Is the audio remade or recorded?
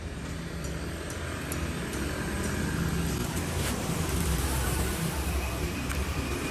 recorded